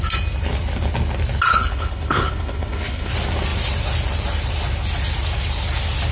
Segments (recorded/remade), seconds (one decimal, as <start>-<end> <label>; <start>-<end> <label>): 0.0-1.5 recorded; 1.5-3.1 remade; 3.1-6.1 recorded